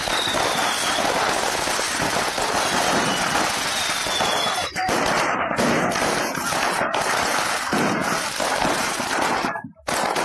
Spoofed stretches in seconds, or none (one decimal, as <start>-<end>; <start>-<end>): none

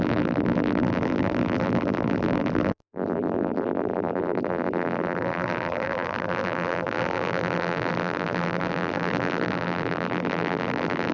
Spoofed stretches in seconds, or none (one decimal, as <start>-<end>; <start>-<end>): 0.0-11.1